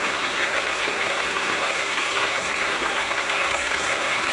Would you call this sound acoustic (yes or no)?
no